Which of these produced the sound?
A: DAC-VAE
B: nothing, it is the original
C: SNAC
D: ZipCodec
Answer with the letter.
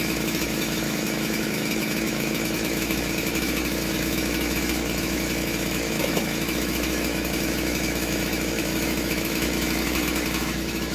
A